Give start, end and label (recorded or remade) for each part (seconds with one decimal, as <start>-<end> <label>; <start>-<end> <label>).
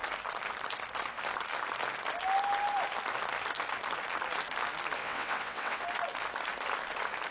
0.0-5.0 recorded; 5.0-5.8 remade; 5.8-7.3 recorded